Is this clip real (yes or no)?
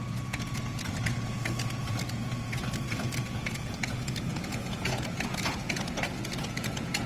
no